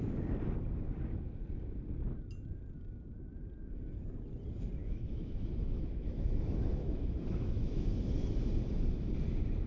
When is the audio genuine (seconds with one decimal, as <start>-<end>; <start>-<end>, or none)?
0.0-4.8; 8.1-9.7

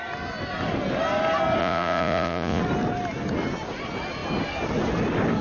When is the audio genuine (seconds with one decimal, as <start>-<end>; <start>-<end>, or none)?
0.0-1.6; 2.6-5.4